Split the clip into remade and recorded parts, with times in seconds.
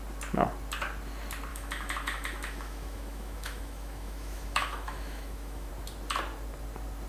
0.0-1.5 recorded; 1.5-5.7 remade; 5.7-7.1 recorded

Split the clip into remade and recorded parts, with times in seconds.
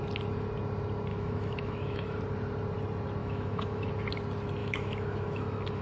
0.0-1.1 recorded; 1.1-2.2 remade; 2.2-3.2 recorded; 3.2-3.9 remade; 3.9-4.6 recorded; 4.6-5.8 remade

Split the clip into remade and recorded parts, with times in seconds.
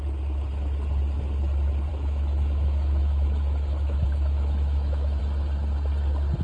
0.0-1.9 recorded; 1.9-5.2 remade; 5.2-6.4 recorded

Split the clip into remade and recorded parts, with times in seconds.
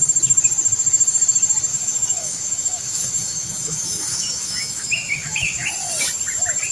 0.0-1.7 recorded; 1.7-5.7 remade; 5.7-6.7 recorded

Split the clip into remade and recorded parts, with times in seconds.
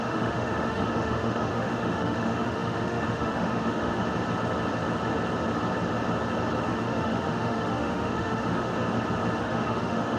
0.0-4.0 remade; 4.0-6.7 recorded; 6.7-8.7 remade; 8.7-9.4 recorded; 9.4-10.2 remade